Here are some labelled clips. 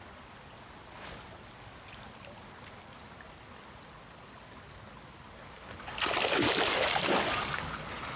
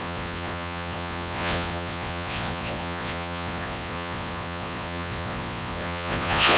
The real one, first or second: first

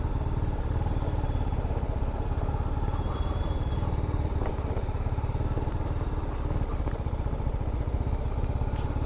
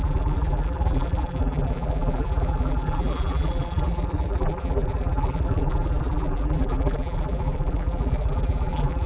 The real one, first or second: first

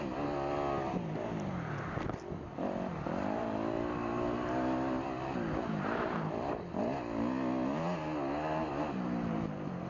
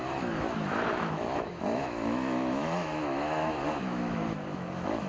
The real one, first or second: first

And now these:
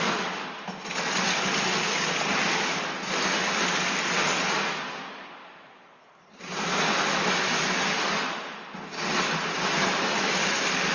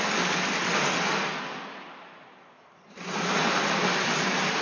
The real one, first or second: first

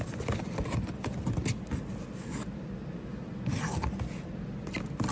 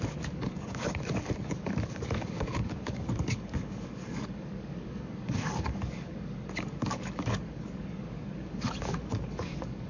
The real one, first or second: first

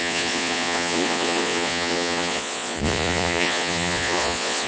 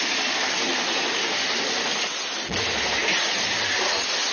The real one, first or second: second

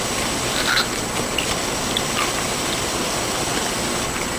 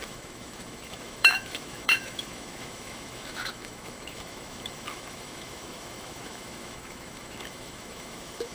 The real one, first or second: first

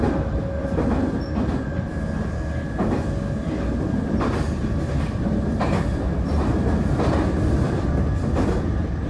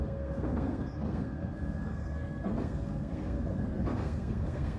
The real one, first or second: first